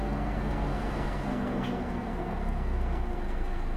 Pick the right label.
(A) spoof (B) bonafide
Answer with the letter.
A